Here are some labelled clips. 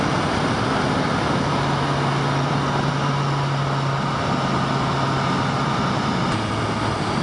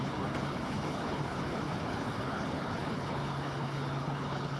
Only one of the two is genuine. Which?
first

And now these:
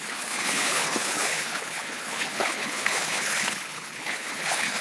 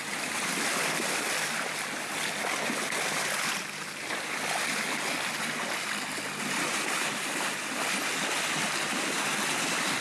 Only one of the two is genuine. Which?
second